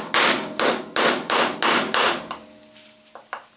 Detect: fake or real real